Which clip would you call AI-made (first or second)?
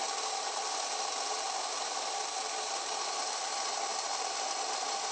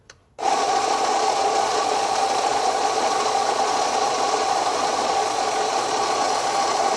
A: second